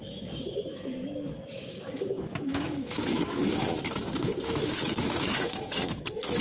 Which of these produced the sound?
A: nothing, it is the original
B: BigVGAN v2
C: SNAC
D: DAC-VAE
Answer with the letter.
D